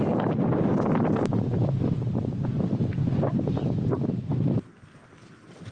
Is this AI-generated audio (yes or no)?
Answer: no